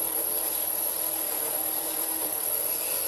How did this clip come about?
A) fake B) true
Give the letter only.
B